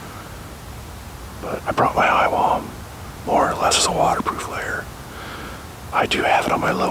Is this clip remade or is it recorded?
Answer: recorded